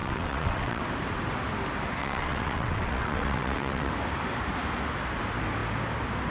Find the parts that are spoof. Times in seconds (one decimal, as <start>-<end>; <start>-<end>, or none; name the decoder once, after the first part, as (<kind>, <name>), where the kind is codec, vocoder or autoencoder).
0.0-0.8 (vocoder, WaveNeXt); 2.0-3.9